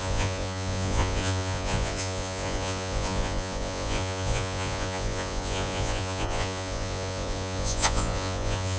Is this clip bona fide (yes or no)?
no